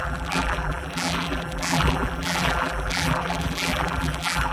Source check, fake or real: fake